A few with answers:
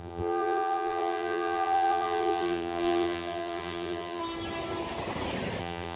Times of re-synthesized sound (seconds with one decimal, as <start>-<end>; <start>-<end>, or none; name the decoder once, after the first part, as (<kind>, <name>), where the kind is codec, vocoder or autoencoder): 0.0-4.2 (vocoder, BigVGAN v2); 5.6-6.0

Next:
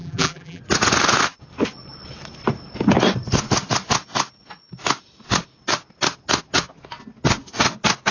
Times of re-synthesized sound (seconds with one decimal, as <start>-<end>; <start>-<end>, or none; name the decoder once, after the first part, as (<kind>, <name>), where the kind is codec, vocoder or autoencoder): 0.0-0.6 (vocoder, BigVGAN v2)

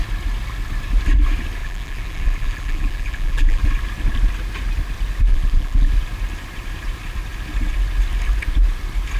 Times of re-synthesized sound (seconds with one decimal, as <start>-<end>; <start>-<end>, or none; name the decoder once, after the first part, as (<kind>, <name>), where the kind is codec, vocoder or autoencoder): 1.6-3.6 (vocoder, BigVGAN v2); 5.3-5.9

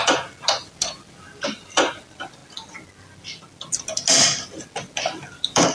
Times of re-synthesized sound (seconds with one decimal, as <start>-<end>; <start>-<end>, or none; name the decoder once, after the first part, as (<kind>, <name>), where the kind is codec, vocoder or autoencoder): 0.0-2.4 (vocoder, BigVGAN v2); 5.0-5.7

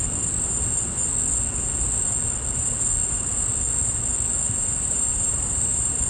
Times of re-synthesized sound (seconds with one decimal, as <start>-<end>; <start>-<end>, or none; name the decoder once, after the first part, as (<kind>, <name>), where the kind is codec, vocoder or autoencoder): 4.6-6.1 (vocoder, BigVGAN v2)